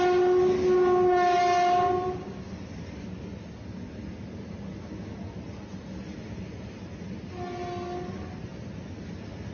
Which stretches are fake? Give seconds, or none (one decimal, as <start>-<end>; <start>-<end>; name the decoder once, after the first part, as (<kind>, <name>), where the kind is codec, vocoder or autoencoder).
none

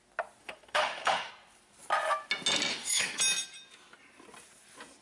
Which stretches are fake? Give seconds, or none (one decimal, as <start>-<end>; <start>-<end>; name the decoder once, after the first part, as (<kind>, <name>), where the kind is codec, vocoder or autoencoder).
0.4-1.3 (autoencoder, DAC-VAE); 2.7-3.2

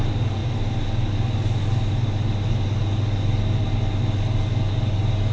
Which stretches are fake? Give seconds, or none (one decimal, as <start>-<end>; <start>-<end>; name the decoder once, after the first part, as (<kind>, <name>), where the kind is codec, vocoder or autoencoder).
none

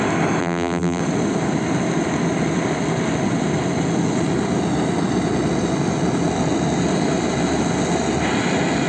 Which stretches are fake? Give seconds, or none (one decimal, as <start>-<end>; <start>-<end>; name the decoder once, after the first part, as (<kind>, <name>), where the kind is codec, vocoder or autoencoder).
0.4-1.0 (vocoder, BigVGAN v2)

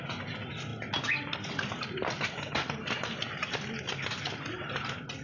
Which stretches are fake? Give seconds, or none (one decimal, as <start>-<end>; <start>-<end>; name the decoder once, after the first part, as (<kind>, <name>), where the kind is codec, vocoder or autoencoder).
none